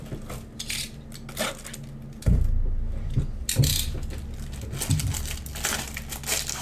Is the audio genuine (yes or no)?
yes